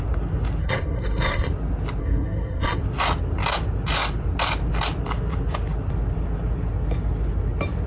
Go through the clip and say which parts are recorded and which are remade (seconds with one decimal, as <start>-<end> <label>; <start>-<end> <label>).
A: 0.0-0.6 recorded; 0.6-1.5 remade; 1.5-2.0 recorded; 2.0-2.8 remade; 2.8-7.9 recorded